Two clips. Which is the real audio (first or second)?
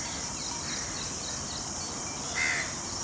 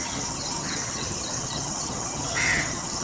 first